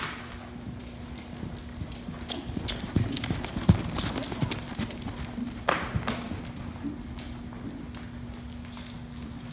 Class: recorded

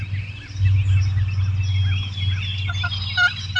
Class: recorded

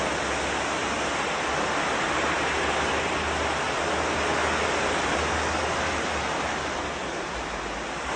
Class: recorded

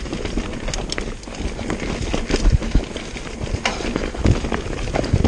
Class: recorded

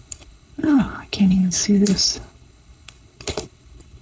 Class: remade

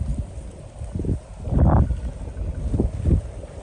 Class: recorded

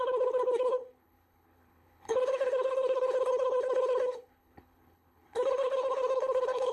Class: remade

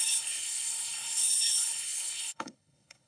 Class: remade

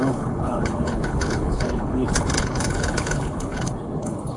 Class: remade